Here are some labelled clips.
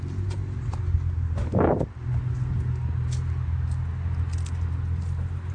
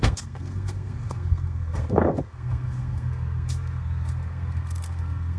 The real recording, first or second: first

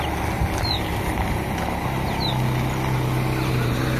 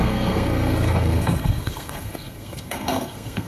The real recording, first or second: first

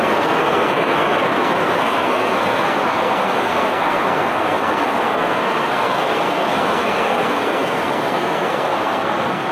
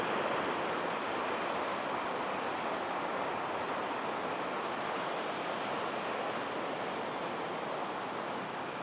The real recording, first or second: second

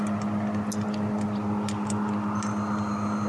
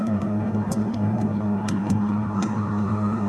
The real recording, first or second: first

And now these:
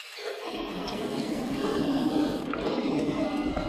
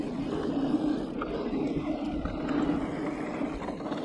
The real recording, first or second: second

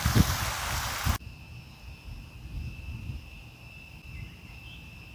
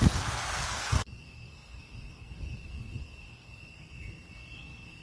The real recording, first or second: first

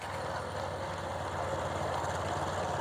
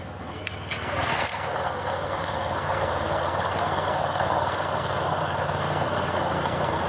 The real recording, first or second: first